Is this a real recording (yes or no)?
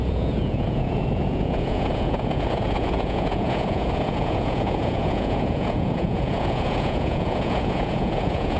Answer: no